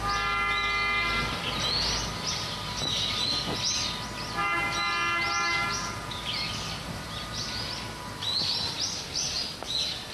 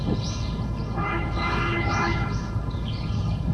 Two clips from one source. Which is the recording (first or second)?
first